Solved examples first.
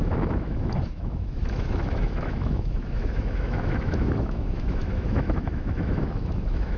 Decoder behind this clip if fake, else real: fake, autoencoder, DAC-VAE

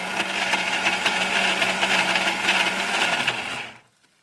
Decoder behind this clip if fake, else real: real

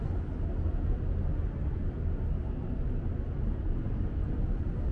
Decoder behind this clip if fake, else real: real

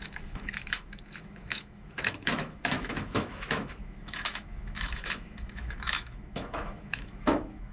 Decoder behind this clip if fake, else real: fake, autoencoder, DAC-VAE